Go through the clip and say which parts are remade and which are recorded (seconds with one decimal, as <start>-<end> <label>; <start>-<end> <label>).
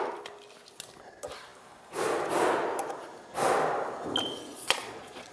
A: 0.0-4.5 recorded; 4.5-5.3 remade